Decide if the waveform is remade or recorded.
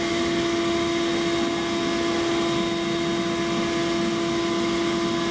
recorded